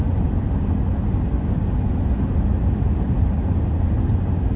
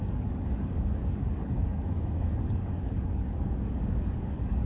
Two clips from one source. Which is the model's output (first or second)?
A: second